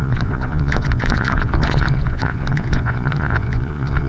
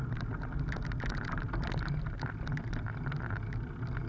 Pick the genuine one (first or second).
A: second